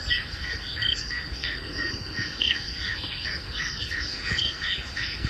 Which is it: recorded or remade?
remade